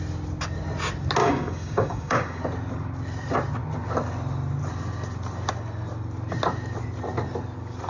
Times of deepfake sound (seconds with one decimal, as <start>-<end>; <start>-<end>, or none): 1.2-2.4